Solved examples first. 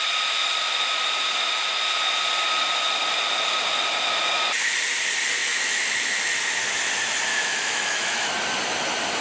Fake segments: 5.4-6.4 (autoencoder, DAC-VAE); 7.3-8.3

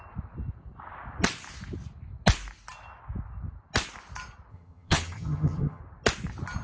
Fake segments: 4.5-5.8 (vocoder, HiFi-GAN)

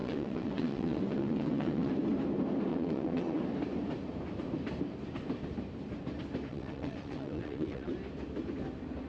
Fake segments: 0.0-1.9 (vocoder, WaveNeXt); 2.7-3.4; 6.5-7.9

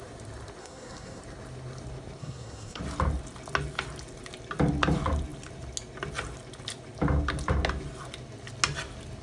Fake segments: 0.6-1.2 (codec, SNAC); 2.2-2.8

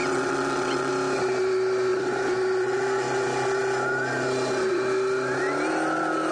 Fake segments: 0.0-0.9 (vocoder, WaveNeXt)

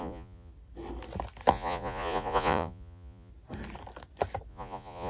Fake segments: 0.0-0.5 (vocoder, Vocos); 1.5-3.3; 4.5-5.1

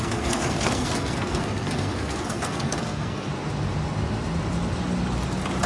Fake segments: 0.0-3.3 (codec, SNAC)

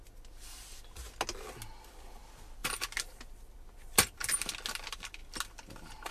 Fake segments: none